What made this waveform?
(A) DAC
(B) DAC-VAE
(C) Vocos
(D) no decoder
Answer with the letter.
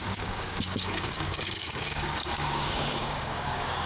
A